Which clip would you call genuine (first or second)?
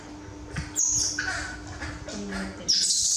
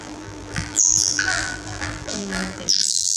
first